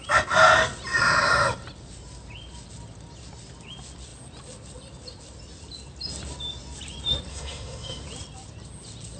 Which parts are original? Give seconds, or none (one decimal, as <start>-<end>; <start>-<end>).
0.0-7.3; 8.0-9.2